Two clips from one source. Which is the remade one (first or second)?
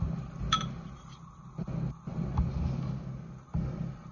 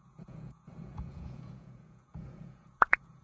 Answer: second